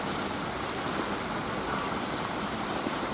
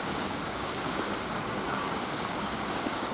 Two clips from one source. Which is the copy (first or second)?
second